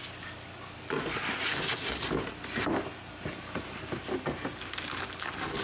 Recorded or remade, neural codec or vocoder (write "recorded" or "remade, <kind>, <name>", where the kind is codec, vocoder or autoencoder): recorded